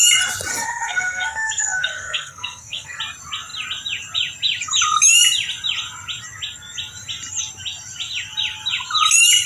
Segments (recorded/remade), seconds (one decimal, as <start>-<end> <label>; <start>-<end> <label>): 0.0-0.5 recorded; 0.5-3.0 remade; 3.0-9.5 recorded